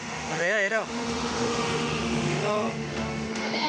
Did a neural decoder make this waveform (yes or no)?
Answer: yes